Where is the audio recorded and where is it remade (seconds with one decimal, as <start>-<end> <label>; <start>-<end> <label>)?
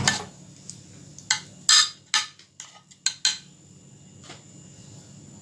0.0-5.4 recorded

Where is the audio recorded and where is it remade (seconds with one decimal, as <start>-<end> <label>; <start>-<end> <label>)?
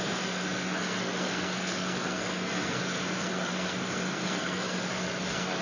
0.0-5.6 remade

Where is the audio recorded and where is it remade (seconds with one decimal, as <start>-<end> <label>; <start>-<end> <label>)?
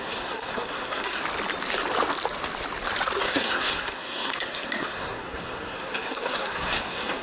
0.0-1.2 remade; 1.2-3.2 recorded; 3.2-7.2 remade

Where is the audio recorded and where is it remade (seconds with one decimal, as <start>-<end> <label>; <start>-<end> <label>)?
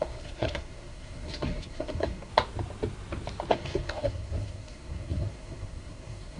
0.0-2.3 remade; 2.3-3.5 recorded; 3.5-6.4 remade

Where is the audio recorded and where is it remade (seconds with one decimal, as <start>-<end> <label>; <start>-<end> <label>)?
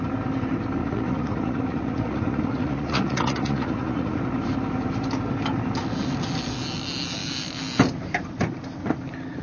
0.0-0.8 recorded; 0.8-4.2 remade; 4.2-9.4 recorded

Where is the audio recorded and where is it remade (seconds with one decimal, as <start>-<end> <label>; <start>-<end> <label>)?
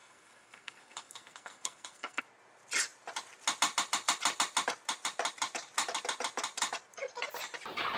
0.0-2.2 remade; 2.2-8.0 recorded